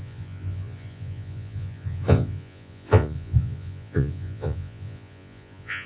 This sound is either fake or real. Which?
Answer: fake